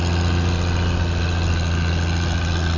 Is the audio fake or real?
real